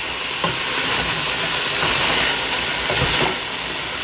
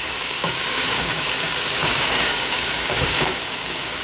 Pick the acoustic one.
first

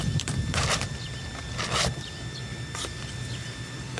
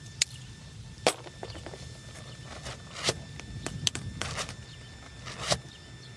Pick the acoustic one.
second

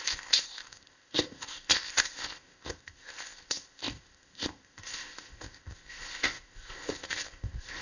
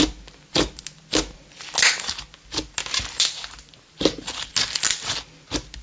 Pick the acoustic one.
second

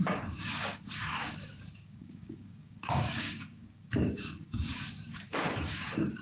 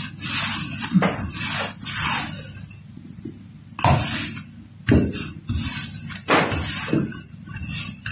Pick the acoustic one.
second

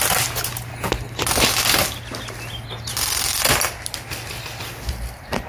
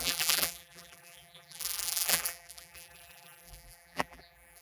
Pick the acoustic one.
first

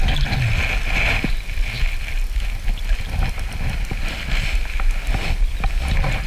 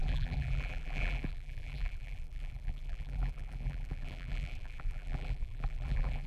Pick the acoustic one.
first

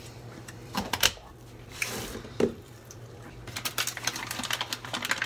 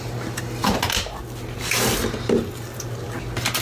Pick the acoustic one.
second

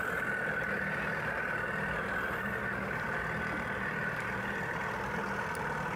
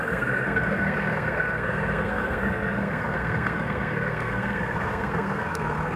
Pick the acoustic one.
first